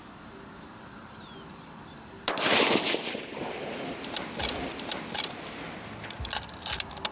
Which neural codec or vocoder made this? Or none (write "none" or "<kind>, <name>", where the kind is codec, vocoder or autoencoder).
none